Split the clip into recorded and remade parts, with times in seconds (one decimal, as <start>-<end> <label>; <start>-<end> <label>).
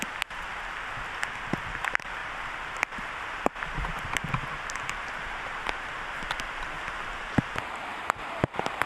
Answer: 0.0-2.2 recorded; 2.2-7.0 remade; 7.0-7.9 recorded; 7.9-8.9 remade